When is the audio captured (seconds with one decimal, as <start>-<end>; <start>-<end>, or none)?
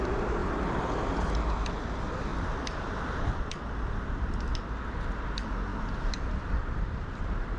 0.0-0.4; 1.3-2.3; 3.5-5.7; 7.0-7.6